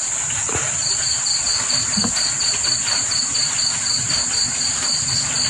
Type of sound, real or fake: real